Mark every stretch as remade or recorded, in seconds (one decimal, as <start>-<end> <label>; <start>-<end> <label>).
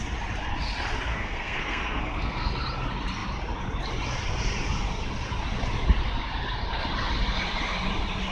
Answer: 0.0-1.1 recorded; 1.1-2.5 remade; 2.5-8.3 recorded